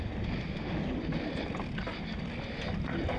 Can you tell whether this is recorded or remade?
recorded